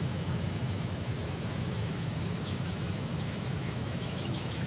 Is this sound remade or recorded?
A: remade